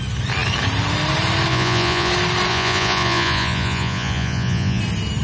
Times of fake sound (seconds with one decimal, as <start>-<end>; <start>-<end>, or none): 1.5-2.1; 2.5-4.8